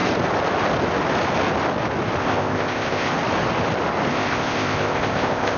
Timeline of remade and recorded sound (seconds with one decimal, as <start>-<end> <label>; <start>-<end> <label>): 0.0-2.2 recorded; 2.2-3.1 remade; 3.1-4.1 recorded; 4.1-5.6 remade